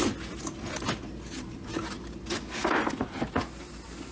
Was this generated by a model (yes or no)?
no